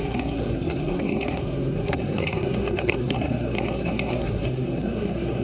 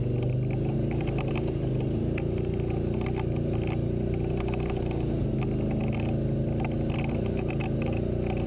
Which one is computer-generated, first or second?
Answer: first